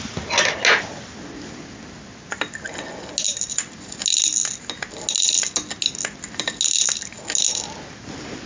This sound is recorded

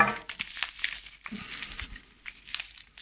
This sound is recorded